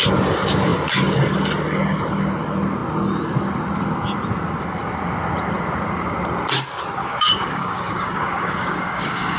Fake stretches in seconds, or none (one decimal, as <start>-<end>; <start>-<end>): 7.0-9.4